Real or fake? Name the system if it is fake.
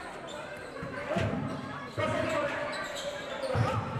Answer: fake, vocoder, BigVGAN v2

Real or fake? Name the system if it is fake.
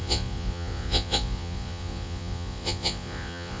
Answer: fake, vocoder, Vocos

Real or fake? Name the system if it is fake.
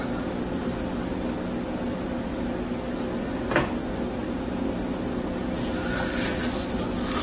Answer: real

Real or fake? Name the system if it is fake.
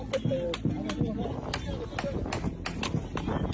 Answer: real